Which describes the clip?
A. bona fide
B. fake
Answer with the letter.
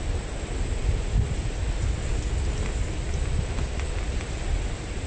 A